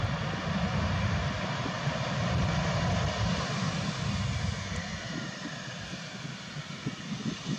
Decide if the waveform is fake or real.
real